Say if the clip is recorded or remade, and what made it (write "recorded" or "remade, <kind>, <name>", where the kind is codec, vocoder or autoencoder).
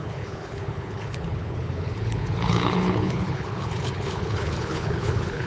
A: remade, codec, HILCodec